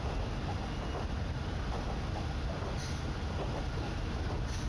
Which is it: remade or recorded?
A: recorded